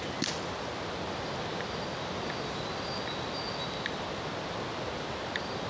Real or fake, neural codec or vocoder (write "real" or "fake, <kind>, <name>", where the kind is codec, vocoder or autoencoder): real